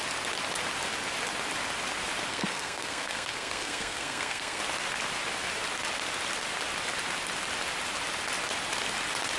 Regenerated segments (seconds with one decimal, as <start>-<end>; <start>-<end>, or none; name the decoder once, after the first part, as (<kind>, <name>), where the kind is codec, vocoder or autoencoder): 2.3-4.6 (codec, SNAC)